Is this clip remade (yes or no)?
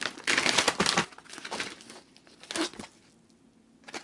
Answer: no